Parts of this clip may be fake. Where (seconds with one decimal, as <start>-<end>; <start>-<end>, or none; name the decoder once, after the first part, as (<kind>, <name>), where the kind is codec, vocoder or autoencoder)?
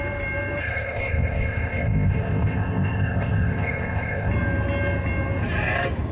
0.6-4.3 (codec, ZipCodec)